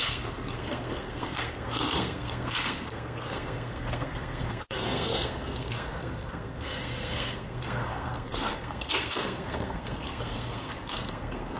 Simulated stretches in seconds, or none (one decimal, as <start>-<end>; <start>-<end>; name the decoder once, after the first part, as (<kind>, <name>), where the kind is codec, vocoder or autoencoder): 0.0-11.6 (codec, SNAC)